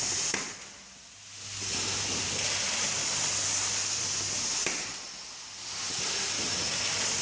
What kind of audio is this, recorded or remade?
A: recorded